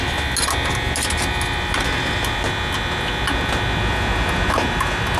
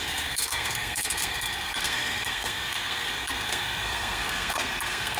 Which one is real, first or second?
first